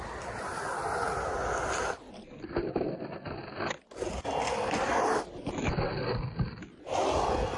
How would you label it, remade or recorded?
recorded